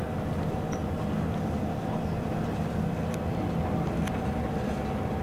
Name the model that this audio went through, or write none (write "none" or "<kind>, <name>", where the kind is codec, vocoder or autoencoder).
none